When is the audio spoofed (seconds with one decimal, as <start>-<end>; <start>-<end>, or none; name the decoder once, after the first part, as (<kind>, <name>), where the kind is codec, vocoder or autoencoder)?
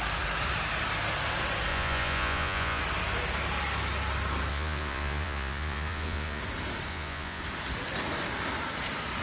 1.7-2.8 (vocoder, Vocos); 4.5-6.4; 6.9-7.4